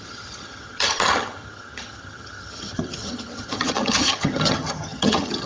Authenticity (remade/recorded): remade